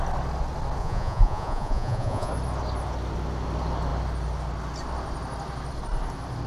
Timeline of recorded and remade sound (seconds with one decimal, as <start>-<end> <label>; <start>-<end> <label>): 0.0-0.8 recorded; 0.8-2.3 remade; 2.3-6.5 recorded